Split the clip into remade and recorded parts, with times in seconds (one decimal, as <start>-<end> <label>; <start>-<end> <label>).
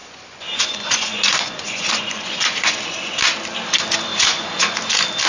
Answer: 0.0-3.2 remade; 3.2-4.1 recorded; 4.1-4.8 remade; 4.8-5.3 recorded